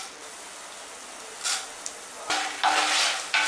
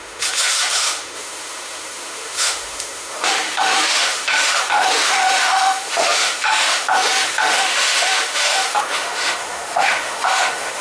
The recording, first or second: first